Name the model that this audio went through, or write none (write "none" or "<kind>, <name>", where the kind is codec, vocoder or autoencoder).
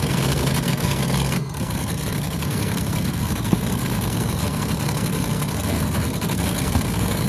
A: codec, SNAC